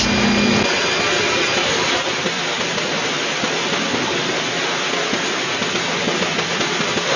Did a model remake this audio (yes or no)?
no